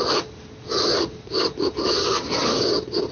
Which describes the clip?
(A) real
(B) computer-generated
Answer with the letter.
A